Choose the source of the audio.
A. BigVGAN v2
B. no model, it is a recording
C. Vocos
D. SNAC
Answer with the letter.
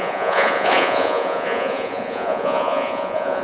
C